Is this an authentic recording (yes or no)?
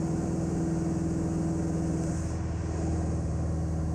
yes